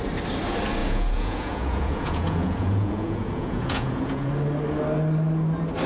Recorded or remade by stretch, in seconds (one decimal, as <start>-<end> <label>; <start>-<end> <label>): 0.0-0.8 recorded; 0.8-4.3 remade; 4.3-5.9 recorded